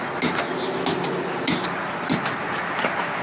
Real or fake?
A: real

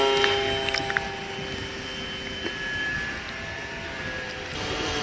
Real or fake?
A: real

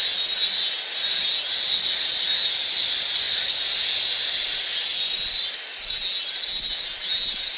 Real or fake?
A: real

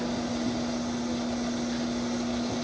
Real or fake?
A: real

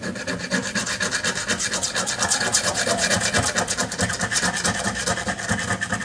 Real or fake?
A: real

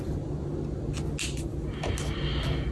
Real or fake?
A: real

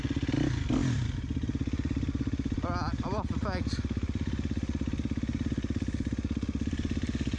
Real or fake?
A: real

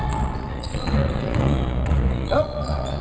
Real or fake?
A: fake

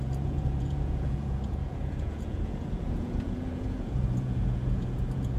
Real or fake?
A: fake